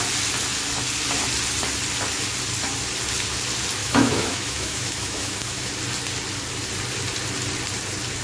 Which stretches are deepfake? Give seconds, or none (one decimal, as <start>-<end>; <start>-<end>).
3.8-5.7

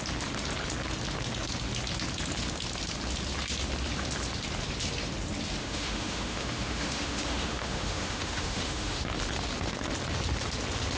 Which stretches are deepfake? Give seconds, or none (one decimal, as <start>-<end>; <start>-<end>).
5.6-9.0

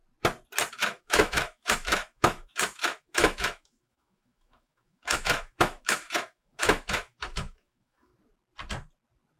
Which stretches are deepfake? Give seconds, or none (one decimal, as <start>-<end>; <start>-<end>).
0.7-8.1

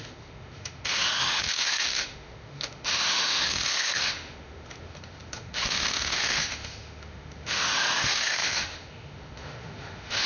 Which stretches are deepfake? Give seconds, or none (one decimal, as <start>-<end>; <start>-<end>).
0.0-10.3

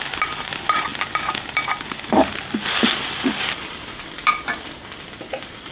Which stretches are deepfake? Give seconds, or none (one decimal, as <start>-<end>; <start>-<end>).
none